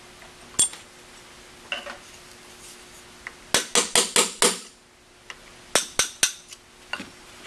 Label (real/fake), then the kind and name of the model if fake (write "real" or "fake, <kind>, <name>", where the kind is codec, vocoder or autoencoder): real